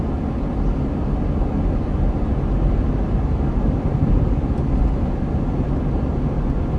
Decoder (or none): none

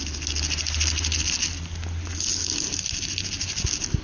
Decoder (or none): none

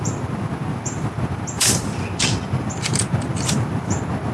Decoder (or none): vocoder, BigVGAN v2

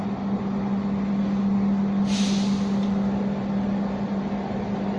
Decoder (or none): none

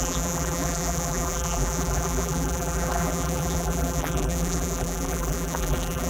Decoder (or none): vocoder, BigVGAN v2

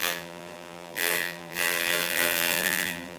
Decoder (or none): vocoder, BigVGAN v2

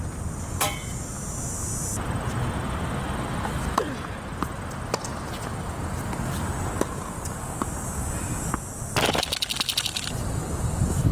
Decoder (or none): none